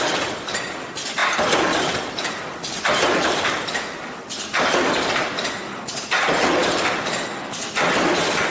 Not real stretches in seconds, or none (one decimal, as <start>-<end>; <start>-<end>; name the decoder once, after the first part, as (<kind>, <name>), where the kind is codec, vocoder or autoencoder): none